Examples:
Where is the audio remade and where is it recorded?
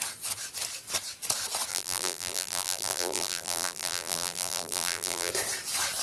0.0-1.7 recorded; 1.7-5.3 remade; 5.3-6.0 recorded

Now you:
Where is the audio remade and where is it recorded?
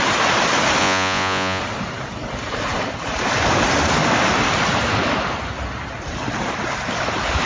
0.0-0.8 recorded; 0.8-1.6 remade; 1.6-7.5 recorded